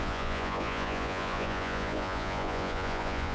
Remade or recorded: remade